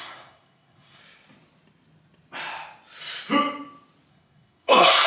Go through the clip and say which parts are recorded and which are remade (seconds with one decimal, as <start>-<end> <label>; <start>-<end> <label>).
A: 0.0-1.0 remade; 1.0-4.1 recorded; 4.1-5.1 remade